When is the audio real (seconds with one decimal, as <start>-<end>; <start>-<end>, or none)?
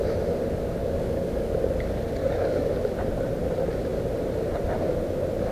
0.0-0.8; 1.5-2.2; 2.8-5.5